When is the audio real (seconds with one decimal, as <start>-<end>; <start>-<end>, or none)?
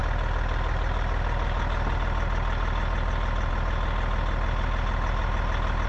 3.5-5.9